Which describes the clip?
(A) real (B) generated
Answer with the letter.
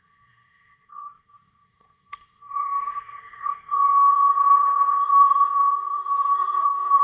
B